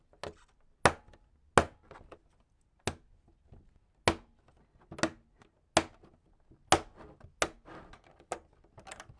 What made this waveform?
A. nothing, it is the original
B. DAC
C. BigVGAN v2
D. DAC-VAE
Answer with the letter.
A